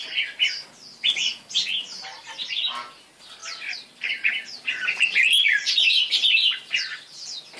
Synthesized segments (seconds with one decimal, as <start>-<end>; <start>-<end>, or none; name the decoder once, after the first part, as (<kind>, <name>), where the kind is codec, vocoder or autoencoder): 3.0-7.6 (vocoder, BigVGAN v2)